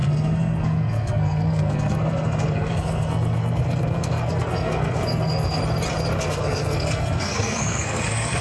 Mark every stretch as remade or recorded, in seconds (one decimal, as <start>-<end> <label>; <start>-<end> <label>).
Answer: 0.0-5.6 remade; 5.6-6.2 recorded; 6.2-8.4 remade